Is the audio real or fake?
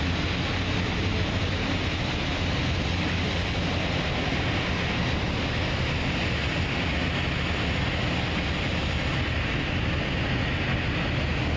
real